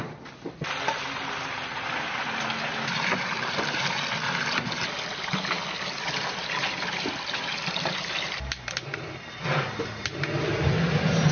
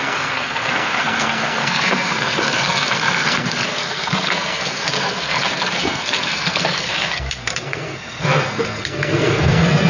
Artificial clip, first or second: second